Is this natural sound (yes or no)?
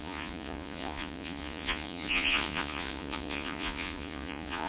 no